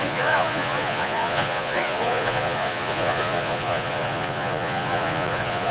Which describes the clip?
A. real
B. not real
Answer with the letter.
B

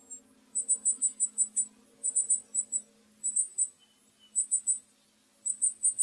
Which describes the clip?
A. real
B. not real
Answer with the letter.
A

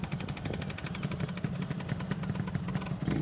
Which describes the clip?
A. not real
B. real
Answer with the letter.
B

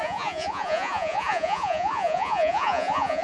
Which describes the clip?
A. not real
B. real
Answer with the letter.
A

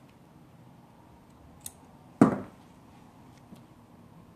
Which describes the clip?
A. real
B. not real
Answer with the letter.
A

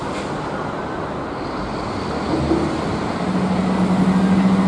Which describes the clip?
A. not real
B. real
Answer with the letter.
B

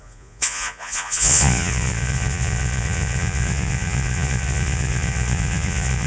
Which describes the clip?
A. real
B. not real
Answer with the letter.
B